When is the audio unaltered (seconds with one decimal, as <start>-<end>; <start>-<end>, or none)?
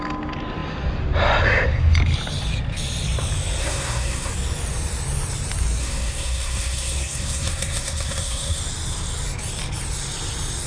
0.0-3.6; 4.3-5.8; 8.6-10.7